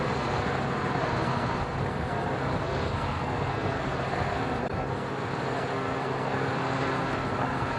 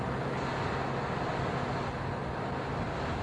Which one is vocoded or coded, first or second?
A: first